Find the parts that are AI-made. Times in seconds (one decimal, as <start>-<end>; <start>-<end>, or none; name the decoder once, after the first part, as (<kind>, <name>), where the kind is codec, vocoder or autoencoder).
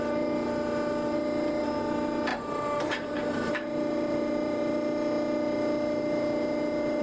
2.3-4.7 (vocoder, BigVGAN v2)